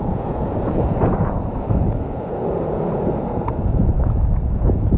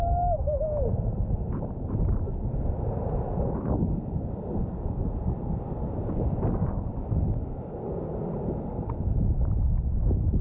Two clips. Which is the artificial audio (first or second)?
first